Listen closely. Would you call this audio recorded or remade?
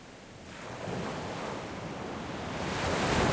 recorded